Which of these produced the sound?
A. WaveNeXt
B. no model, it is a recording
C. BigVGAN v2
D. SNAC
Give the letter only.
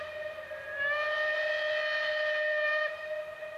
B